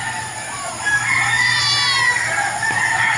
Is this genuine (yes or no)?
yes